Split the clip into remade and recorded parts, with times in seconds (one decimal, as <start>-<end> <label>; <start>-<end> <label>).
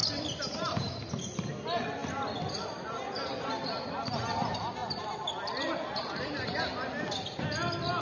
0.0-8.0 recorded